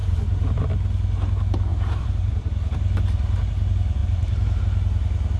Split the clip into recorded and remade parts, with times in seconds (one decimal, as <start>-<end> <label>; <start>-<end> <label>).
0.0-0.7 remade; 0.7-1.7 recorded; 1.7-2.3 remade; 2.3-4.0 recorded; 4.0-4.6 remade; 4.6-5.4 recorded